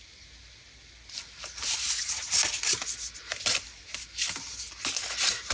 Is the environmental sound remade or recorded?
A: recorded